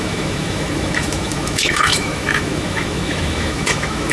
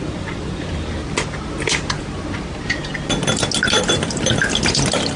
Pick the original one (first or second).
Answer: second